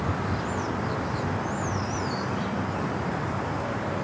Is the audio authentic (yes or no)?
no